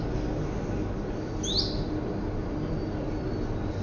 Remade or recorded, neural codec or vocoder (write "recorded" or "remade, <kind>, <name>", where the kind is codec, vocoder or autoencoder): recorded